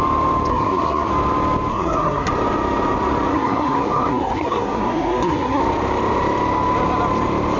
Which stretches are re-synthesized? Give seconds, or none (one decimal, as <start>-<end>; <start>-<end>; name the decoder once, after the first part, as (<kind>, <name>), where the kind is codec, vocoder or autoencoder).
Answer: 0.5-1.1 (codec, SNAC); 1.7-2.3; 3.3-5.6